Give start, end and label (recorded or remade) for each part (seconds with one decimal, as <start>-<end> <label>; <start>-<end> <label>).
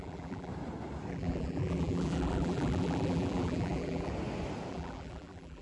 0.0-0.5 remade; 0.5-1.1 recorded; 1.1-4.1 remade; 4.1-4.7 recorded; 4.7-5.6 remade